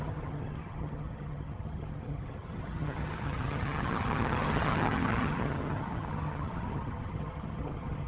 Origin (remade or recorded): remade